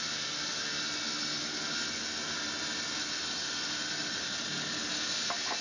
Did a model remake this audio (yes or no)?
no